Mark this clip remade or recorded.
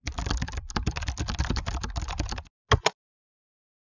recorded